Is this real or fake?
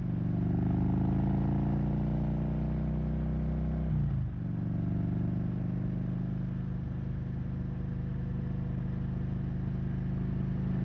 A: real